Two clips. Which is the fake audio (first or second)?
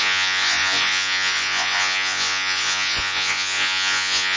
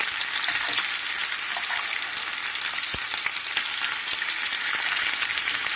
first